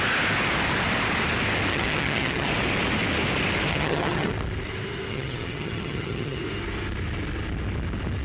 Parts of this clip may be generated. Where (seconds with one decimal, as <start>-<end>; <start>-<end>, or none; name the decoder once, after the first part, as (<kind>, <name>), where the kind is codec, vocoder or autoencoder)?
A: 1.7-2.5 (vocoder, HiFi-GAN); 3.7-4.3; 5.1-6.4